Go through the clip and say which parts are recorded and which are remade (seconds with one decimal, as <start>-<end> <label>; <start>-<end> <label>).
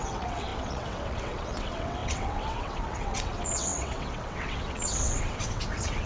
0.0-6.1 remade